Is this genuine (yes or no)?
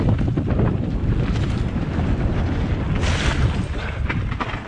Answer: yes